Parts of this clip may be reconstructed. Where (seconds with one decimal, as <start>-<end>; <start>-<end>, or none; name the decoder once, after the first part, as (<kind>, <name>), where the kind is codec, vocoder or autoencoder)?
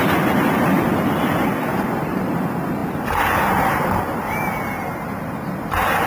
1.7-2.4 (vocoder, BigVGAN v2)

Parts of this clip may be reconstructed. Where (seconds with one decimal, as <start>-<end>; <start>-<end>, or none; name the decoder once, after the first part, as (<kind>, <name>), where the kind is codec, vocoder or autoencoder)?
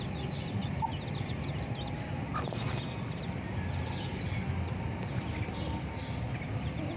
none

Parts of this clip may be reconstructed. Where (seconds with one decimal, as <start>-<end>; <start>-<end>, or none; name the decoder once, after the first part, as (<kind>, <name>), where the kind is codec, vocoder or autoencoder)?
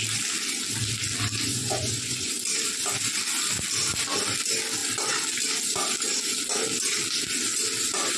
1.5-2.3 (vocoder, Vocos)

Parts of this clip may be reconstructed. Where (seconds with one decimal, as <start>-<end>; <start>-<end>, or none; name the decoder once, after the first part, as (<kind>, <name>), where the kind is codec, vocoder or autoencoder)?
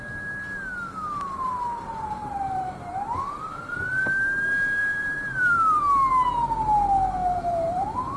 2.2-2.8 (vocoder, BigVGAN v2); 4.8-5.8; 7.2-8.2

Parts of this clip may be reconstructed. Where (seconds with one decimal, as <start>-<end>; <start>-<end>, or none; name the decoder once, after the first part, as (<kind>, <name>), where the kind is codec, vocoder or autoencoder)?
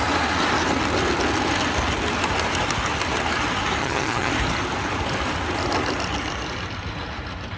3.8-4.3 (vocoder, HiFi-GAN)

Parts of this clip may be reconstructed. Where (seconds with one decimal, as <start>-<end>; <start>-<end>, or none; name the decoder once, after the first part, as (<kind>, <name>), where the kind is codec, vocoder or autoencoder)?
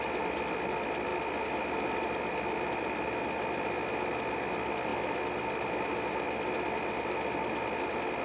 none